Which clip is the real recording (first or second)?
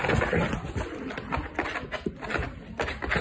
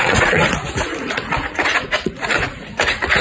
first